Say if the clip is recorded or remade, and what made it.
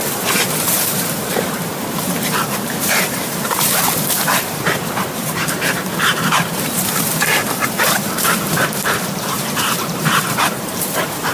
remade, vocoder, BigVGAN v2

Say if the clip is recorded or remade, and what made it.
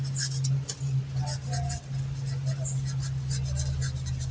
recorded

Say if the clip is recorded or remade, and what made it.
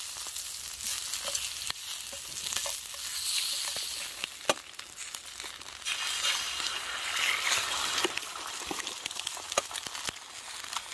recorded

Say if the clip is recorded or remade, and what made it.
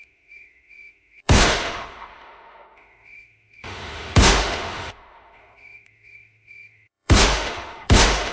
remade, autoencoder, DAC-VAE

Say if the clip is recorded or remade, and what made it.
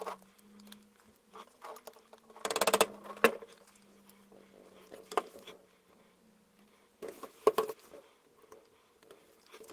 recorded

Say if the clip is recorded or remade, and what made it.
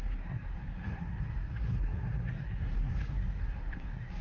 remade, codec, SNAC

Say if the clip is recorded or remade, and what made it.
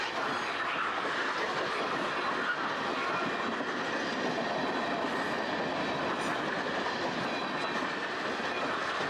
recorded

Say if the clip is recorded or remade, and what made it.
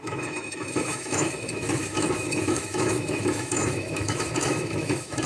remade, autoencoder, DAC-VAE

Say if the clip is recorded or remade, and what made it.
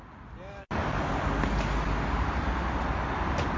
recorded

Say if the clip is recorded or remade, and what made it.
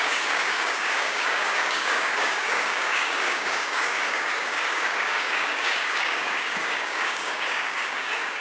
remade, codec, DAC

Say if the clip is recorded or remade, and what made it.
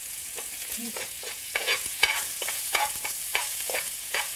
remade, vocoder, Vocos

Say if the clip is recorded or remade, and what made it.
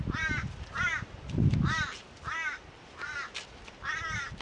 recorded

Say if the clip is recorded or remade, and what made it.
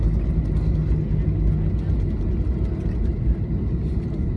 recorded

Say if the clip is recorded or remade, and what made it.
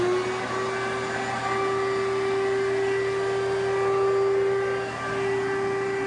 recorded